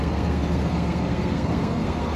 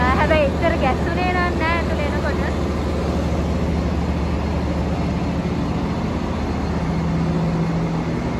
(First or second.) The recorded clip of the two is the second